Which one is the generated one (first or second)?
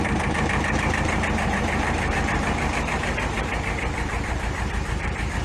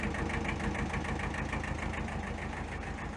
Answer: first